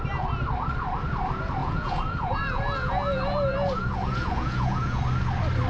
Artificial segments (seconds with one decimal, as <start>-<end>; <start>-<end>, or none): 1.6-5.0